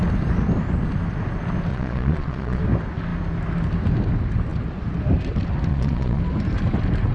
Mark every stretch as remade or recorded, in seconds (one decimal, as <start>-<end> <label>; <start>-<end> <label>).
0.0-1.7 recorded; 1.7-2.6 remade; 2.6-5.7 recorded; 5.7-6.2 remade; 6.2-7.1 recorded